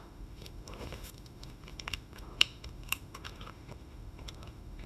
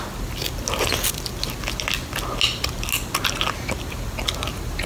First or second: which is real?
second